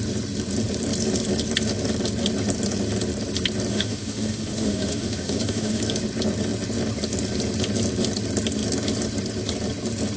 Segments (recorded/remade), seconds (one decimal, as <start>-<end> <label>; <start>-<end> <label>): 0.0-3.7 recorded; 3.7-5.8 remade; 5.8-10.2 recorded